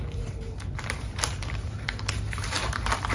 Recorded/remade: remade